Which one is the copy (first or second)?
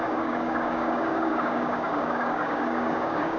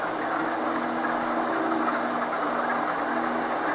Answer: first